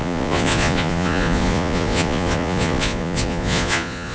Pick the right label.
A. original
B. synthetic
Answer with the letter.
B